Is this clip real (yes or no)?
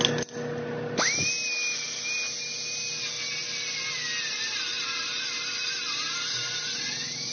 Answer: yes